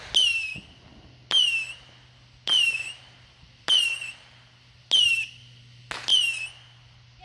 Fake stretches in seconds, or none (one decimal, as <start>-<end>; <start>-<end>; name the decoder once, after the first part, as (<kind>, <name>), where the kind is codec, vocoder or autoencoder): none